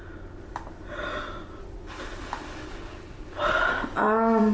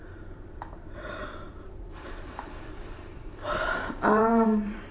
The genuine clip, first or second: first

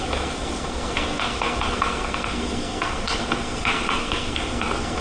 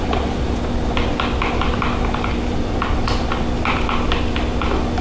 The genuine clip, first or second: second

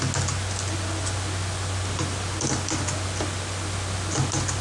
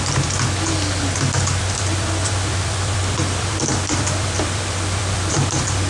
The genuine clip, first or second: first